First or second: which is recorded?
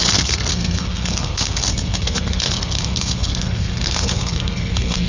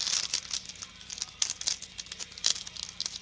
second